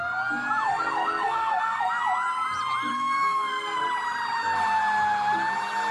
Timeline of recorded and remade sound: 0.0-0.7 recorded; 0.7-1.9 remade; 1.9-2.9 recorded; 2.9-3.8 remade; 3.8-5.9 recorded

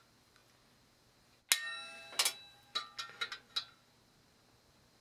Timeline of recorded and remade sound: 0.0-5.0 recorded

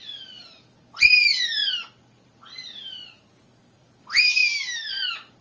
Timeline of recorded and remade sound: 0.0-4.4 remade; 4.4-4.9 recorded; 4.9-5.4 remade

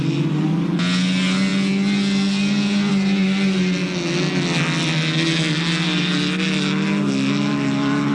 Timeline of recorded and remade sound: 0.0-8.1 recorded